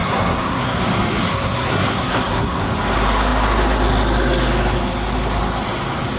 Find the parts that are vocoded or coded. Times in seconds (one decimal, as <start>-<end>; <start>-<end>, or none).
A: 0.0-0.8; 1.3-2.7